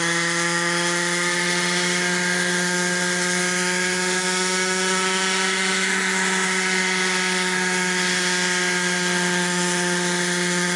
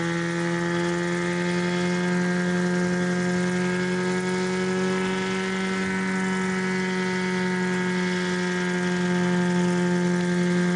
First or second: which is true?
second